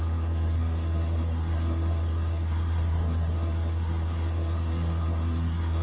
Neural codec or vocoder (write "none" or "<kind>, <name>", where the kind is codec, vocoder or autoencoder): codec, SNAC